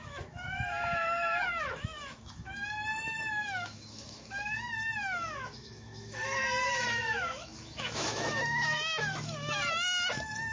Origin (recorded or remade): remade